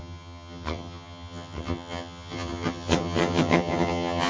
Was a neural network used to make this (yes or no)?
yes